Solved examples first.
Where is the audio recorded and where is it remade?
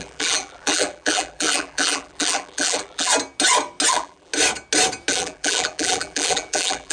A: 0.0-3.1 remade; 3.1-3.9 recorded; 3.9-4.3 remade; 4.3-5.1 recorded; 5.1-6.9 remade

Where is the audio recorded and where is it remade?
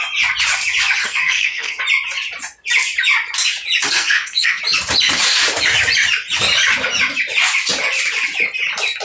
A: 0.0-1.0 recorded; 1.0-1.8 remade; 1.8-3.9 recorded; 3.9-4.6 remade; 4.6-9.0 recorded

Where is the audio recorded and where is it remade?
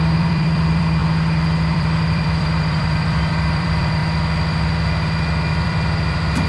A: 0.0-4.0 remade; 4.0-5.5 recorded; 5.5-6.5 remade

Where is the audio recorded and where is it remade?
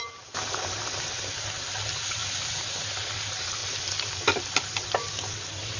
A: 0.0-5.8 recorded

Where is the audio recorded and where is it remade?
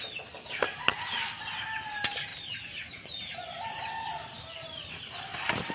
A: 0.0-2.3 recorded; 2.3-4.9 remade; 4.9-5.7 recorded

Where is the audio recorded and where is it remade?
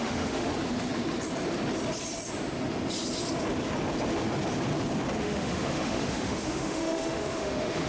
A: 0.0-0.5 remade; 0.5-5.2 recorded; 5.2-7.9 remade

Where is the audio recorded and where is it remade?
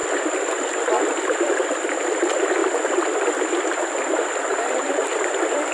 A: 0.0-0.5 recorded; 0.5-2.6 remade; 2.6-3.6 recorded; 3.6-5.7 remade